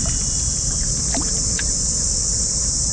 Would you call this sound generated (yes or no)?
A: no